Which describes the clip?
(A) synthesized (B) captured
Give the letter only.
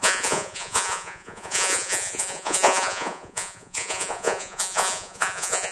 A